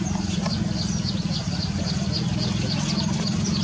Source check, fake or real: real